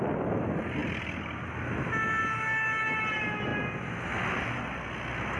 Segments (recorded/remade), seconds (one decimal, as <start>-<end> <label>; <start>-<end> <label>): 0.0-5.4 recorded